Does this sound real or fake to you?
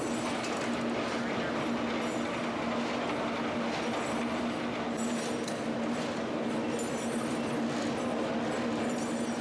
real